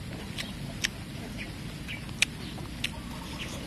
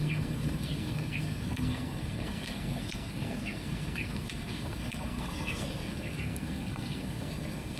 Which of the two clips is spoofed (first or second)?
second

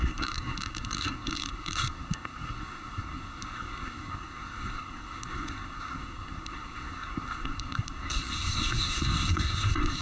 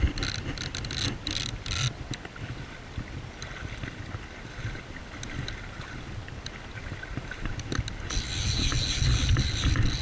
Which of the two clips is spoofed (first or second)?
first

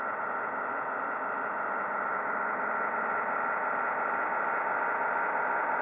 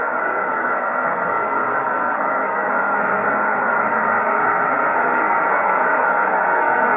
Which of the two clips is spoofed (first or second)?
second